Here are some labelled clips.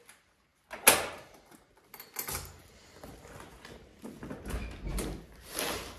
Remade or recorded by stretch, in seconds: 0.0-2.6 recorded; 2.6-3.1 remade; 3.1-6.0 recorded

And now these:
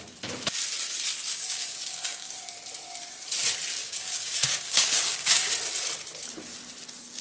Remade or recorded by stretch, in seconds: 0.0-1.3 recorded; 1.3-2.3 remade; 2.3-3.8 recorded; 3.8-5.5 remade; 5.5-7.2 recorded

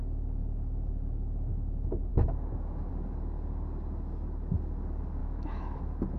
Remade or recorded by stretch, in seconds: 0.0-2.1 recorded; 2.1-2.9 remade; 2.9-5.2 recorded; 5.2-5.8 remade; 5.8-6.2 recorded

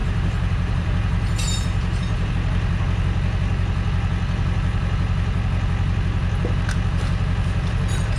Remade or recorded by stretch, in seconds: 0.0-2.3 remade; 2.3-8.2 recorded